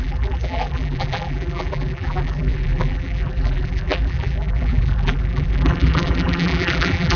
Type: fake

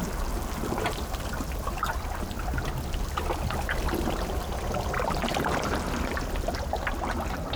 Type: real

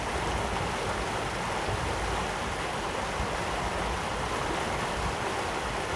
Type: real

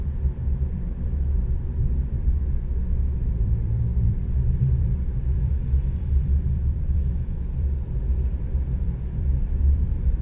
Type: fake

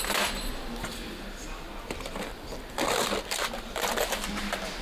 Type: real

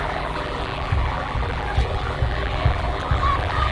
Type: fake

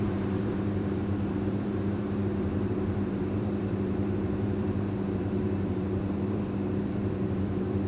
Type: fake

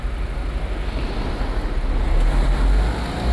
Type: real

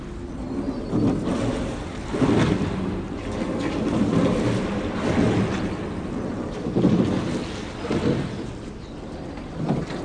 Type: real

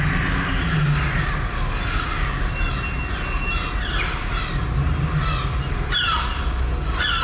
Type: real